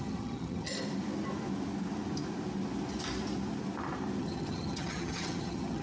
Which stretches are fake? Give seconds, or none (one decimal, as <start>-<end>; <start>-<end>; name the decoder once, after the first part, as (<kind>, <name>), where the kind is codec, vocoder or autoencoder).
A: 0.0-0.7 (vocoder, HiFi-GAN); 4.2-5.8